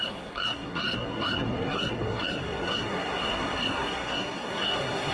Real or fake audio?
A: fake